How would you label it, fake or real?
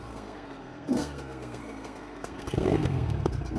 fake